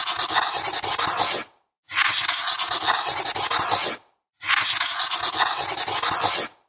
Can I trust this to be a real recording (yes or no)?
yes